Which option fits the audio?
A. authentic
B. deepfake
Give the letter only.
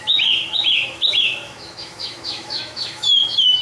B